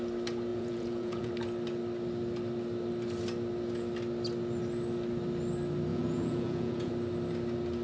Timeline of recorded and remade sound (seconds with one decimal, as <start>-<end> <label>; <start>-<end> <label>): 0.0-0.5 recorded; 0.5-1.3 remade; 1.3-5.9 recorded; 5.9-6.9 remade; 6.9-7.8 recorded